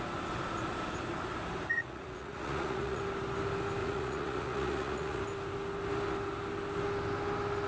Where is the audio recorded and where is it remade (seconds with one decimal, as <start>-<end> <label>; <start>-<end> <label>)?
0.0-1.7 recorded; 1.7-3.0 remade; 3.0-3.8 recorded; 3.8-5.2 remade; 5.2-7.7 recorded